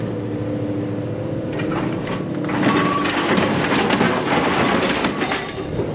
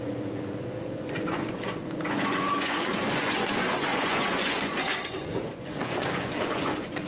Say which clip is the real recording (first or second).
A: first